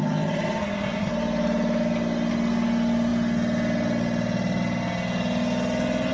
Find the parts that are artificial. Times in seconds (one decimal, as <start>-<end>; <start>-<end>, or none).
0.6-1.1